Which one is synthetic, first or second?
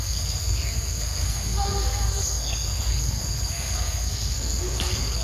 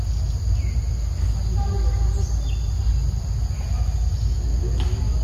first